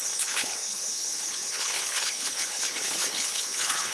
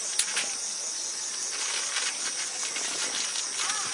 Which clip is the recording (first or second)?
second